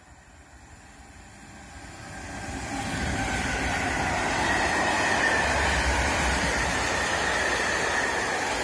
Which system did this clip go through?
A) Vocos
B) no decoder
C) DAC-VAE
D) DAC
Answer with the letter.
B